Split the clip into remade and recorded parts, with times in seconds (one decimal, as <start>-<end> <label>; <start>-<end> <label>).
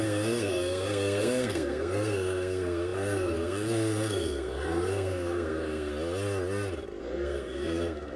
0.0-5.9 remade; 5.9-7.0 recorded; 7.0-8.2 remade